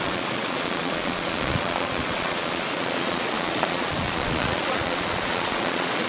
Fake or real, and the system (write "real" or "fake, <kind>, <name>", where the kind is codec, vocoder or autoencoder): fake, vocoder, Vocos